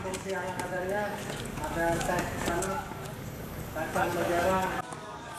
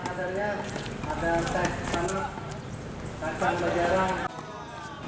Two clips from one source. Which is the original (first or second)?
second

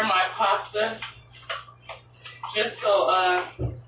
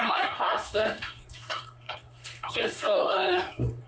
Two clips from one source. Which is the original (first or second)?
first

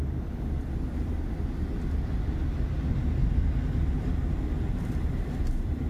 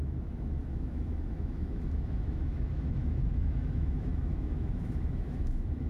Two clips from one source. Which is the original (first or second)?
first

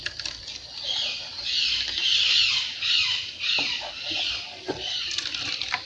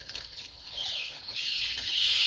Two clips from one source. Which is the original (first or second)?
first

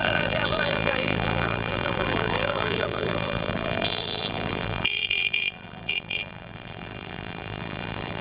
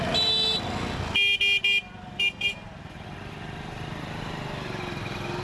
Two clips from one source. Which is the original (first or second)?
second